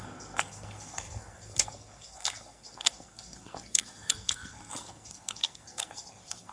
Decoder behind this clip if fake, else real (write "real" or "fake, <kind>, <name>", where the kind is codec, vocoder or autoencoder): fake, codec, SNAC